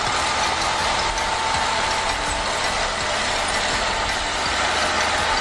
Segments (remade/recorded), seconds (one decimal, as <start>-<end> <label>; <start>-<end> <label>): 0.0-5.4 recorded